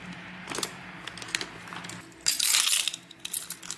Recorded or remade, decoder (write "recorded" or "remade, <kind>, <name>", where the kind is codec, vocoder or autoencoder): recorded